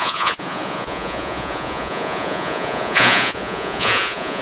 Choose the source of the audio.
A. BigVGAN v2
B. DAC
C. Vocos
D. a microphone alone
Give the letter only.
C